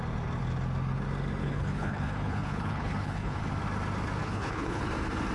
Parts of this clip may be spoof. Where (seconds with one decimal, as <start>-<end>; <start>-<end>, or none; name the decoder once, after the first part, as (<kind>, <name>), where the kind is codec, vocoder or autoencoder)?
1.4-3.4 (codec, HILCodec); 4.2-4.8